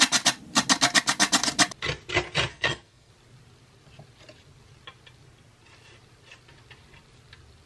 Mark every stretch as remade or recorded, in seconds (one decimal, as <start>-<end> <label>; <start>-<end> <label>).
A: 0.0-2.5 recorded; 2.5-3.1 remade; 3.1-7.7 recorded